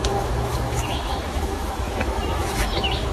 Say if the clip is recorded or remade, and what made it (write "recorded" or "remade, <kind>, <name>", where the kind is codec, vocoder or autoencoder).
remade, autoencoder, DAC-VAE